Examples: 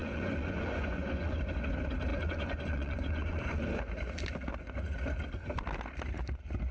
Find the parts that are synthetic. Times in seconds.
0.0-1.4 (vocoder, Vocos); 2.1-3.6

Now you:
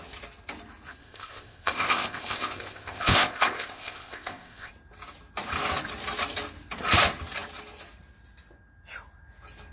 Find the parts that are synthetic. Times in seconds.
1.0-4.7 (codec, ZipCodec)

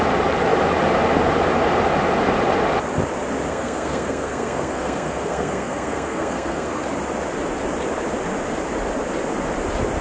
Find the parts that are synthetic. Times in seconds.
3.5-6.8 (codec, SNAC)

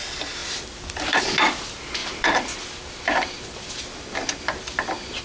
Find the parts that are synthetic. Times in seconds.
0.4-1.2 (vocoder, BigVGAN v2); 2.0-5.2

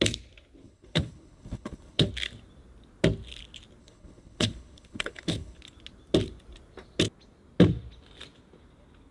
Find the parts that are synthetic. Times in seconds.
0.6-2.1 (codec, HILCodec); 3.8-5.6